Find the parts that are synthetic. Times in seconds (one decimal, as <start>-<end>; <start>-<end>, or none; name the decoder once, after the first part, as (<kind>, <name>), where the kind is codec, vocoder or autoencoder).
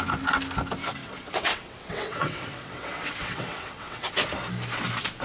1.0-4.1 (vocoder, WaveNeXt)